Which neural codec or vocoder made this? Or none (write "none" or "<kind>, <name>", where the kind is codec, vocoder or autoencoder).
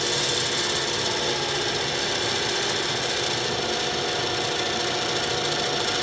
none